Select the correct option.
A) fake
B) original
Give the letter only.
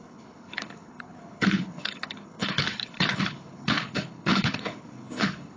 A